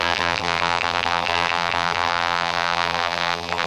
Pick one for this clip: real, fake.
fake